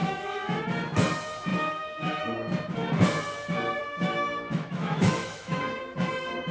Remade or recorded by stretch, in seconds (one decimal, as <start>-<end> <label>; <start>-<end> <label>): 0.0-0.6 remade; 0.6-1.5 recorded; 1.5-2.2 remade; 2.2-3.8 recorded; 3.8-5.6 remade; 5.6-6.5 recorded